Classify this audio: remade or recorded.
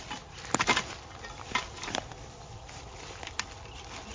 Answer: recorded